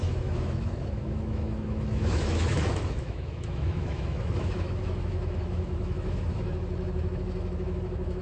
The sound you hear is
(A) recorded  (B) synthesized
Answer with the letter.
B